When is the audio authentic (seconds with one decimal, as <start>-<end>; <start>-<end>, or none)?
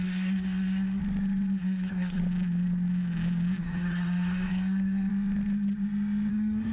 1.0-1.6; 2.2-3.6; 5.1-6.3